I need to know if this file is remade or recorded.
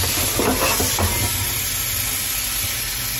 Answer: recorded